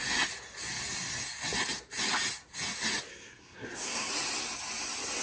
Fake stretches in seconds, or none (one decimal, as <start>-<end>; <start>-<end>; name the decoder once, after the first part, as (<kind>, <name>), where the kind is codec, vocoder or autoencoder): 3.1-4.1 (codec, SNAC)

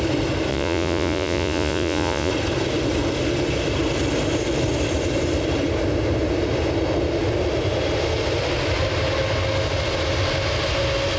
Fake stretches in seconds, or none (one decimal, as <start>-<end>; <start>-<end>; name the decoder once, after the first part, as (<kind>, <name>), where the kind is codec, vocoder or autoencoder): 0.5-2.3 (vocoder, Vocos)

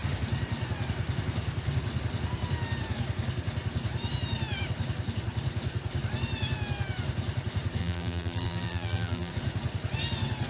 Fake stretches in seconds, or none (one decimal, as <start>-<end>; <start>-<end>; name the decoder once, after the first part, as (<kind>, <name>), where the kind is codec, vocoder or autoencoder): 7.8-9.3 (vocoder, BigVGAN v2)

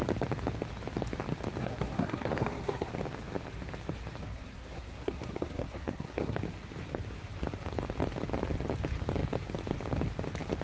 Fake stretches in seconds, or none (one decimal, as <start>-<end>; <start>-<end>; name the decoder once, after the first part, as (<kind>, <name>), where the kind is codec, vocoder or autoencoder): 1.6-2.9 (codec, SNAC); 4.2-6.4

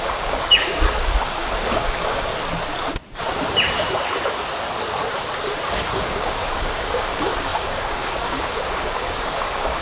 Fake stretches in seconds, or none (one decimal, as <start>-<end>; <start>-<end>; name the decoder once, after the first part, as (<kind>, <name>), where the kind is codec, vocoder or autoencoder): 0.0-2.3 (codec, DAC); 6.0-9.8

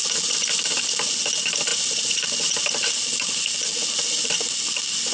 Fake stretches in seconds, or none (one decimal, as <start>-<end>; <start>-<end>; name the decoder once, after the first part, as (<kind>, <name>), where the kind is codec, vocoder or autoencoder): none

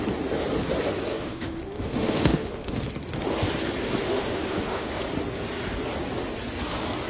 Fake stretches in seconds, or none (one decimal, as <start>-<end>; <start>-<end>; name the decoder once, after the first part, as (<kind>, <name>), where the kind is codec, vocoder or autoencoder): 1.1-2.9 (autoencoder, DAC-VAE); 4.0-5.0